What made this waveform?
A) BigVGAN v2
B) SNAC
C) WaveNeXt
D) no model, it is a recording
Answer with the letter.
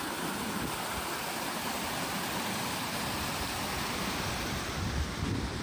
A